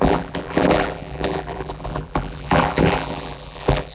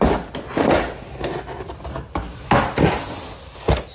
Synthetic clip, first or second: first